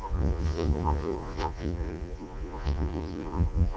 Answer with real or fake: fake